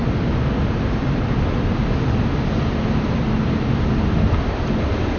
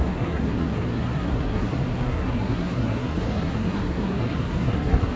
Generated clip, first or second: second